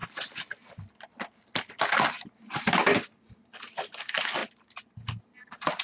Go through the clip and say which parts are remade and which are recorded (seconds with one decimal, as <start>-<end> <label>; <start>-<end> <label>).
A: 0.0-0.9 remade; 0.9-5.8 recorded